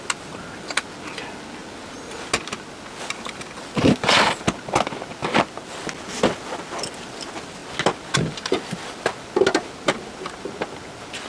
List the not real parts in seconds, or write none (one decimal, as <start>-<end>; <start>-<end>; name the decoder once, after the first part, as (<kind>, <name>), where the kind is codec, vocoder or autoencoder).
none